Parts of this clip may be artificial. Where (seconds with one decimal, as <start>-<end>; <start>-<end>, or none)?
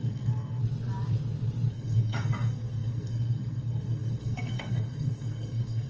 0.0-0.6; 1.7-5.9